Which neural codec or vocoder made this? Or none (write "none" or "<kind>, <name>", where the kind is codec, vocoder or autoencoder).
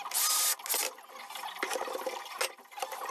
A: none